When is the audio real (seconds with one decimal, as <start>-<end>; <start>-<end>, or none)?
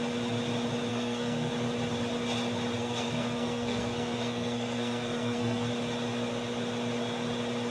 0.0-0.9; 1.5-2.8; 5.7-7.7